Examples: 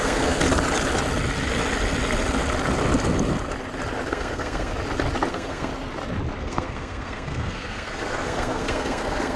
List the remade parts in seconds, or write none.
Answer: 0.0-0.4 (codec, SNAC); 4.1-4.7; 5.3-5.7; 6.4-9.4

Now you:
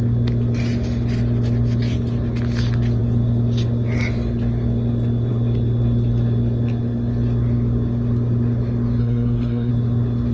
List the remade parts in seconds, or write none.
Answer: 9.0-9.7 (codec, SNAC)

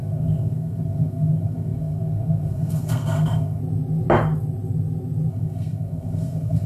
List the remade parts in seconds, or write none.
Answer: 0.0-3.6 (codec, SNAC); 5.3-6.7

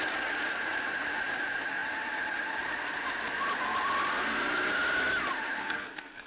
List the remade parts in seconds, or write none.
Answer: 5.6-6.3 (codec, SNAC)